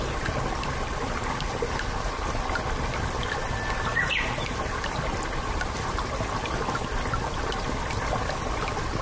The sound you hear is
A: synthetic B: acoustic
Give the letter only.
B